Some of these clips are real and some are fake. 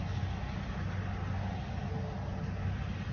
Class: real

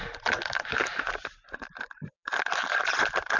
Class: real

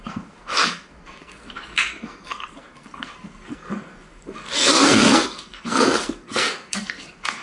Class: fake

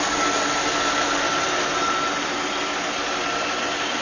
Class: real